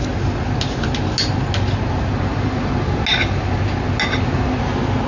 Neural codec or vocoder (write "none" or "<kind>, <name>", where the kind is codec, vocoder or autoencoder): none